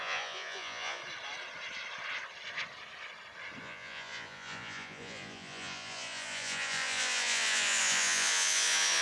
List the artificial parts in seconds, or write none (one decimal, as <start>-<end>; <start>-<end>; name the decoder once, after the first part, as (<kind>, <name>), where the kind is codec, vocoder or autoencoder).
0.0-1.0 (vocoder, Vocos); 3.6-9.0